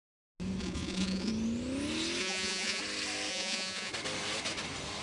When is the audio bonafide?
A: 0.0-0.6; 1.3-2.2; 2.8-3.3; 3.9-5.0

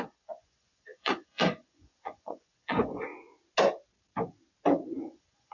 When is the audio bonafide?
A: 3.1-5.0

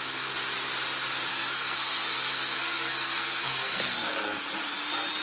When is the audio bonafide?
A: 0.0-1.3; 4.4-5.2